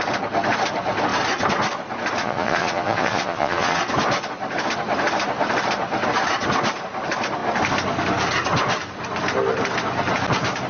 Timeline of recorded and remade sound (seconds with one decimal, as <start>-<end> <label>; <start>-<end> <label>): 0.0-2.2 recorded; 2.2-3.8 remade; 3.8-10.7 recorded